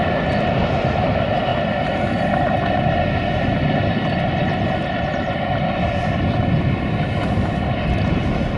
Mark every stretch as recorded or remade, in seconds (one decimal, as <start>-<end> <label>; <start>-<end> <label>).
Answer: 0.0-8.6 recorded

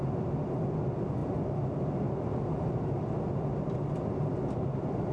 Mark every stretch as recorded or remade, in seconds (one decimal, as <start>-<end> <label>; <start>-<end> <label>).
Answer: 0.0-5.1 recorded

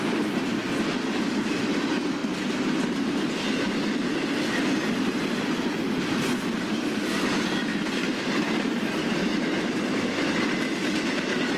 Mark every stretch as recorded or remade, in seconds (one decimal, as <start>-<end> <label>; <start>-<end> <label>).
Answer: 0.0-7.7 recorded; 7.7-9.1 remade; 9.1-11.6 recorded

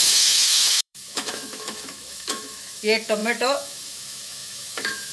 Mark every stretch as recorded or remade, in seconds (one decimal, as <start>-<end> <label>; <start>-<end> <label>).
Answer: 0.0-5.1 remade

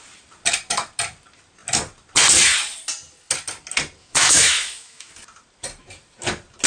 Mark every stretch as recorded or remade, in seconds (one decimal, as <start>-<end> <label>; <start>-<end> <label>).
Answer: 0.0-4.0 recorded; 4.0-5.1 remade; 5.1-6.7 recorded

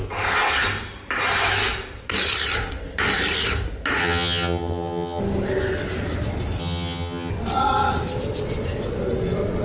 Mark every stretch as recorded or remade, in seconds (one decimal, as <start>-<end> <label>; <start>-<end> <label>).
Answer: 0.0-4.0 recorded; 4.0-5.2 remade; 5.2-6.6 recorded; 6.6-7.3 remade; 7.3-9.6 recorded

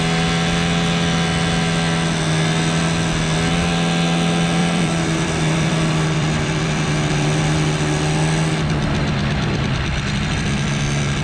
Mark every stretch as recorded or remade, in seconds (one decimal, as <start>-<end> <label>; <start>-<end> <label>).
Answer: 0.0-4.6 recorded; 4.6-7.4 remade; 7.4-11.2 recorded

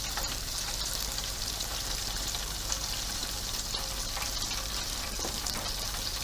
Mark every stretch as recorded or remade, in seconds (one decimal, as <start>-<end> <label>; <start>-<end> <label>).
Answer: 0.0-6.2 remade